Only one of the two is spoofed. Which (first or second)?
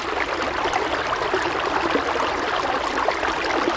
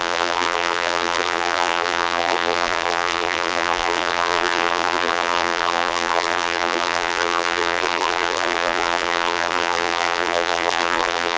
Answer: second